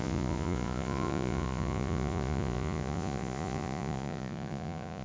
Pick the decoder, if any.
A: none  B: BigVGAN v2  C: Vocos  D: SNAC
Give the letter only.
C